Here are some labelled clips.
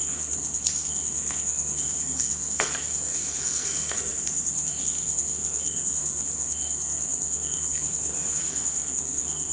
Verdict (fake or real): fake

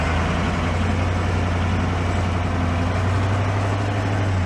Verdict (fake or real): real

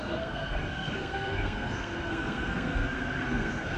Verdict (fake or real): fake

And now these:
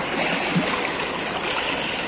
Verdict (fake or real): real